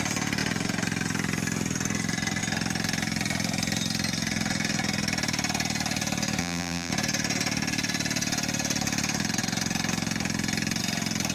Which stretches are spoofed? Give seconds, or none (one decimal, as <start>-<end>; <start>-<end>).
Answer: 6.4-6.9